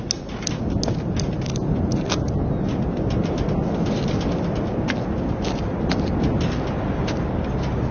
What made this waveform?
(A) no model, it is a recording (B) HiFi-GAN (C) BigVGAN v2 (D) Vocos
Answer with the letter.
A